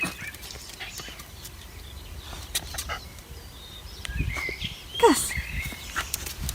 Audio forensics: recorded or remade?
remade